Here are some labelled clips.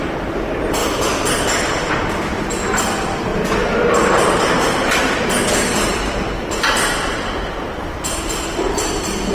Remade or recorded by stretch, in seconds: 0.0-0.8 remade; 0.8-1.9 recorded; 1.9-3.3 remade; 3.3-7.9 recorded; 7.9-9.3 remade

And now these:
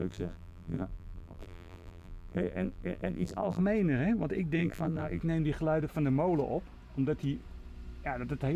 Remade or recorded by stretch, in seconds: 0.0-3.6 remade; 3.6-4.6 recorded; 4.6-5.2 remade; 5.2-8.6 recorded

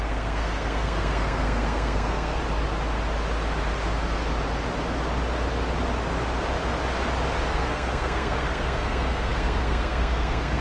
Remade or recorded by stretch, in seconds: 0.0-2.4 remade; 2.4-7.5 recorded; 7.5-10.6 remade

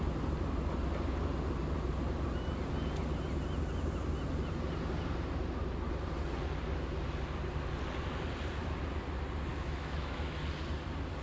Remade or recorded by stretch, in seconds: 0.0-9.5 recorded; 9.5-10.4 remade; 10.4-11.2 recorded